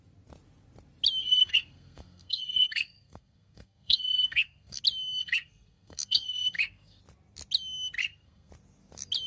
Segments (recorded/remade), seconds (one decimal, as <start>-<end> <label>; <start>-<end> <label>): 0.0-1.2 recorded; 1.2-4.8 remade; 4.8-5.2 recorded; 5.2-7.0 remade; 7.0-8.0 recorded; 8.0-8.5 remade; 8.5-9.3 recorded